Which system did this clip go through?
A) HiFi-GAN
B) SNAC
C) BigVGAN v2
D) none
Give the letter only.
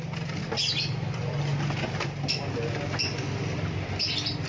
D